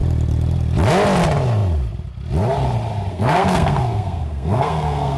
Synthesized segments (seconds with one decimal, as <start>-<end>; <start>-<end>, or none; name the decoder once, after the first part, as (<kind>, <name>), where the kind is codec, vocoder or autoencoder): 3.1-5.2 (codec, SNAC)

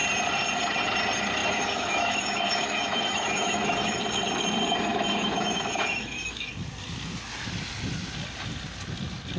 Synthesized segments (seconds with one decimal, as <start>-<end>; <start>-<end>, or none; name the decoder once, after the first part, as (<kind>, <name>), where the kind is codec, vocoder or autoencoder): 1.4-4.0 (autoencoder, DAC-VAE); 4.9-6.5

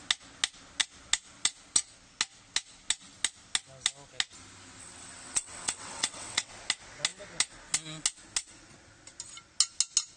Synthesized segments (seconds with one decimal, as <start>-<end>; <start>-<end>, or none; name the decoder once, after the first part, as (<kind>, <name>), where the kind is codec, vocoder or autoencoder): 4.8-6.5 (vocoder, WaveNeXt)

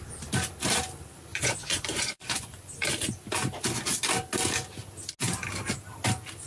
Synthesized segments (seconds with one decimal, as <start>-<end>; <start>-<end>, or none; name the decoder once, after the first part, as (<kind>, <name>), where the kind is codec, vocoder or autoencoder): 1.3-2.7 (vocoder, Vocos)